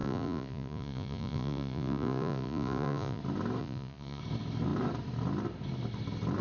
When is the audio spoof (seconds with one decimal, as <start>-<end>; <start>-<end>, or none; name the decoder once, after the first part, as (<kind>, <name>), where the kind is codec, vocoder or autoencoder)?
0.0-3.2 (vocoder, Vocos); 3.6-4.2